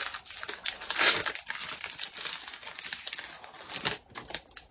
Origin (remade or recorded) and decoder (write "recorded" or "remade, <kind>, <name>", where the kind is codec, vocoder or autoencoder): recorded